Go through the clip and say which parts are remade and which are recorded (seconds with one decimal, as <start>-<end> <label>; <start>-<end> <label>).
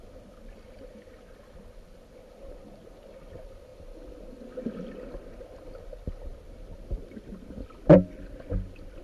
0.0-9.0 recorded